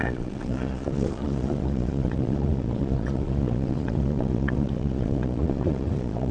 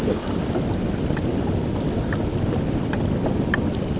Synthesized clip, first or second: first